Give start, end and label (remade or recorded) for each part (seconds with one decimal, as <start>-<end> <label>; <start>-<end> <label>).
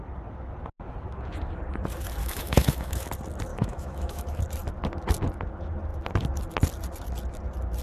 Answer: 0.0-2.2 recorded; 2.2-3.1 remade; 3.1-3.5 recorded; 3.5-4.4 remade; 4.4-7.8 recorded